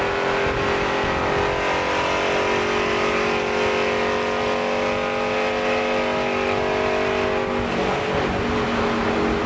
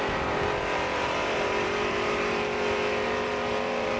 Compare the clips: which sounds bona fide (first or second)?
first